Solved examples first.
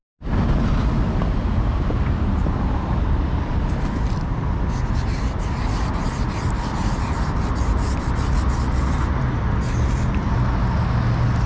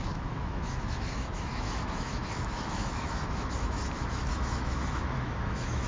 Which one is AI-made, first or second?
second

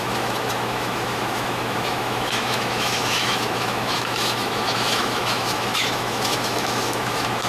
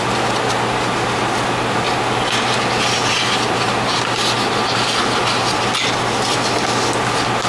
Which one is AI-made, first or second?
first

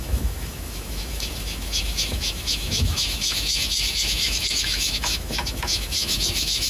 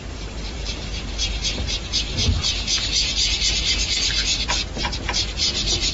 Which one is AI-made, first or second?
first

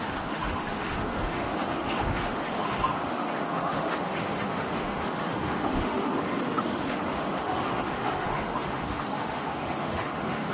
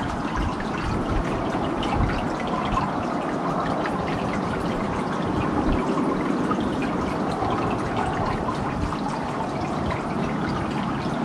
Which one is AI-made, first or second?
first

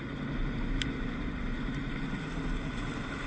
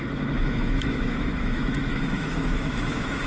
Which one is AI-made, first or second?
second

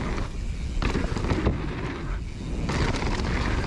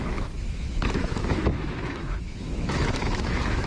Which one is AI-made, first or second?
second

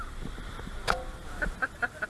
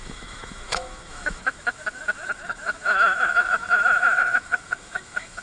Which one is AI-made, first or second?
second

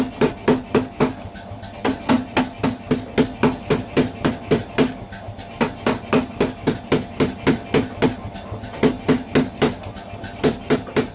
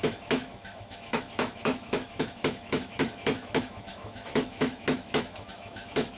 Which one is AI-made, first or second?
second